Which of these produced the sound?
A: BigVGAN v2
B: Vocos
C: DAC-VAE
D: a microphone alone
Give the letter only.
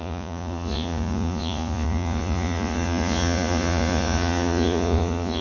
B